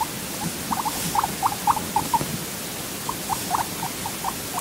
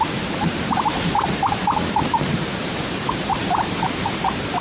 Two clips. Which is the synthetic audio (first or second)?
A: second